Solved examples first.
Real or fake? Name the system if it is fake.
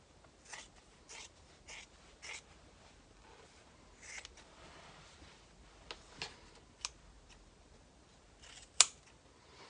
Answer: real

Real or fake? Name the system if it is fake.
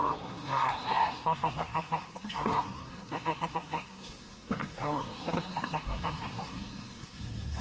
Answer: fake, codec, SNAC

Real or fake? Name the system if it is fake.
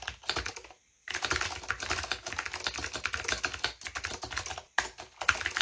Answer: real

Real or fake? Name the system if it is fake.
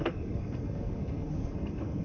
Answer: fake, codec, SNAC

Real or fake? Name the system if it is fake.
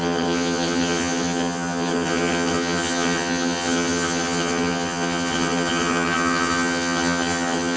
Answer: fake, vocoder, HiFi-GAN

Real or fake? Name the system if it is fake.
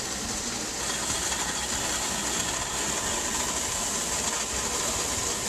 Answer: real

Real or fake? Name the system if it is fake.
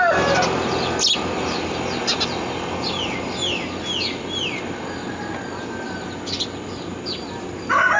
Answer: real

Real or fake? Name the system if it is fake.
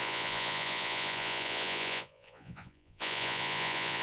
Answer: fake, vocoder, Vocos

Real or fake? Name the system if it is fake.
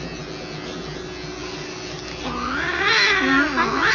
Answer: real